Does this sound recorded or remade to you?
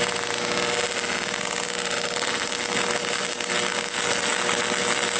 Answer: recorded